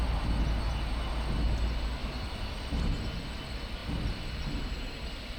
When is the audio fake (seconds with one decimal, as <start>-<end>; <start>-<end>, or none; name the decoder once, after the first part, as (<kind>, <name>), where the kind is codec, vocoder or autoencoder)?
2.0-2.9 (vocoder, BigVGAN v2); 3.8-4.6